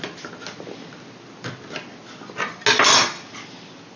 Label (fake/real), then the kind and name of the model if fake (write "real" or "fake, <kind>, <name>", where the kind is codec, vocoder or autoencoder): real